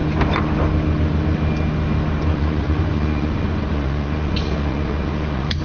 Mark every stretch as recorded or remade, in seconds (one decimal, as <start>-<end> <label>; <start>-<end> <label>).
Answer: 0.0-2.3 recorded; 2.3-5.6 remade